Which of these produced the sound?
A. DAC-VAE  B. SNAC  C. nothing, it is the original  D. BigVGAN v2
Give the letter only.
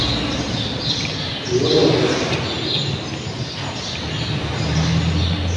C